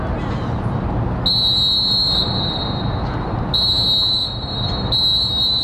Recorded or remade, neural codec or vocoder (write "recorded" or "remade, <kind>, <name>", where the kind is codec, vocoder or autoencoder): recorded